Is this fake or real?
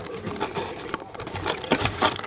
fake